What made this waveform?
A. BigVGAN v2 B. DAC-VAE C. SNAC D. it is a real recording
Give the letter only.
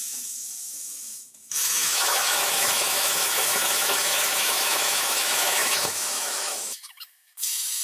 B